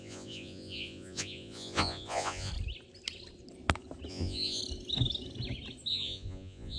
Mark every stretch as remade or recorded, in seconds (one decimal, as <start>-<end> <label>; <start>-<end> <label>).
0.0-2.5 remade; 2.5-4.1 recorded; 4.1-4.6 remade; 4.6-5.9 recorded; 5.9-6.8 remade